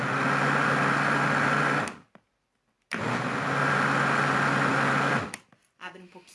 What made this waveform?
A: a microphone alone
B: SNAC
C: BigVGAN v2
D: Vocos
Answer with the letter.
A